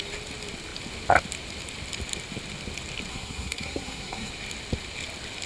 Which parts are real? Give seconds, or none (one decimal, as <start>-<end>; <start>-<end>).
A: 0.0-3.1; 4.3-5.5